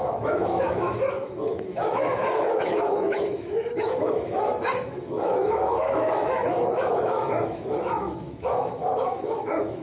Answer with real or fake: fake